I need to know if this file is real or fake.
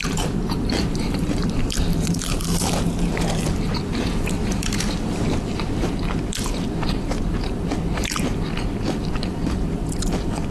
fake